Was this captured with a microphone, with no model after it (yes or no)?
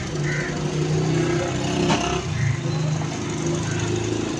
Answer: yes